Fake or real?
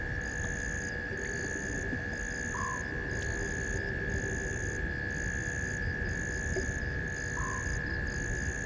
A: real